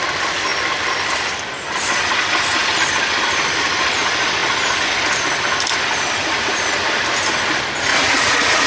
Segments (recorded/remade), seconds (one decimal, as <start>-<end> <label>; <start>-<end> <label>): 0.0-6.2 recorded; 6.2-6.7 remade; 6.7-7.9 recorded; 7.9-8.7 remade